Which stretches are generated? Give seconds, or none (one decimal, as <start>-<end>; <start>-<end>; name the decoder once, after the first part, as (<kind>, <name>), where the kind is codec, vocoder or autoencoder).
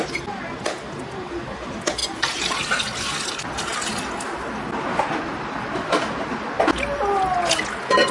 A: 2.0-2.6 (vocoder, BigVGAN v2)